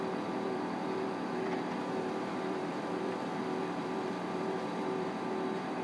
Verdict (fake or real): fake